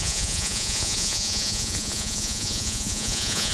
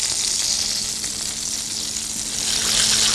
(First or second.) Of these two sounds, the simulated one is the first